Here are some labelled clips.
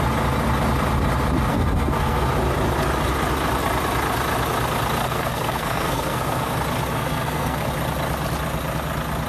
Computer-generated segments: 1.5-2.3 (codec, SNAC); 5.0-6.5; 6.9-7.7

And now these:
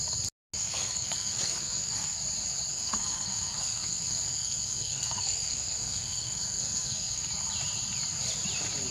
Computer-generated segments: 0.6-2.2 (codec, SNAC); 2.7-7.3

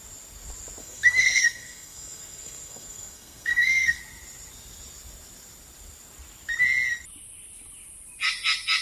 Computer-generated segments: 0.8-4.0 (codec, SNAC)

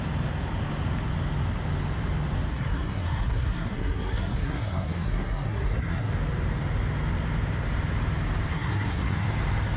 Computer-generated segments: 2.5-6.1 (codec, SNAC); 8.5-9.3

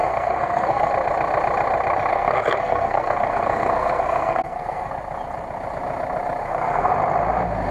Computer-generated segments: 0.0-0.9 (codec, SNAC); 2.1-4.9; 6.4-6.9

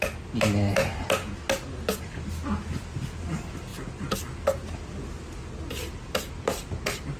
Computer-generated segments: none